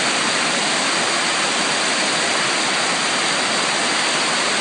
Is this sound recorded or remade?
recorded